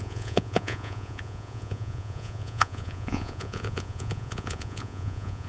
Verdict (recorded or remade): remade